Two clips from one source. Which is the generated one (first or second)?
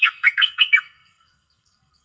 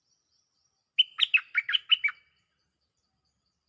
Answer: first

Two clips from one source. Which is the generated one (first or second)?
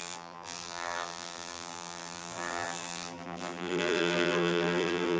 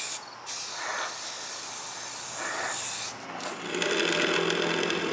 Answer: first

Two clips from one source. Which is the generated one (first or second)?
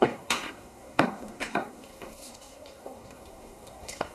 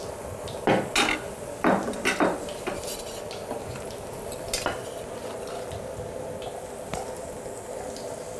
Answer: first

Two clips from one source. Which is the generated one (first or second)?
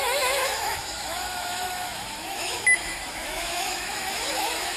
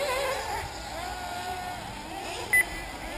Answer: first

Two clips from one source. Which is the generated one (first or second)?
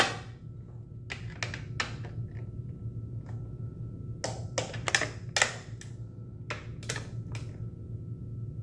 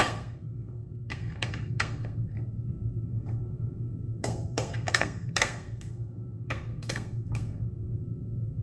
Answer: second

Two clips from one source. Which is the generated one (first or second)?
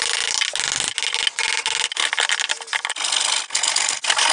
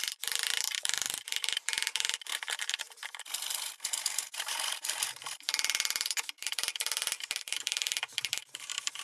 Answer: second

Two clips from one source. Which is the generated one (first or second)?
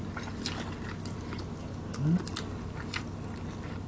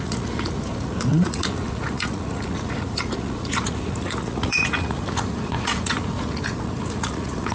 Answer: second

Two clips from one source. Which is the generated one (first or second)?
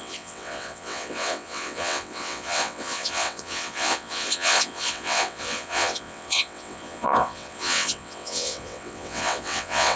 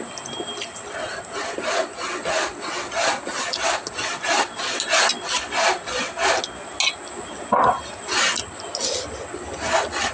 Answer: first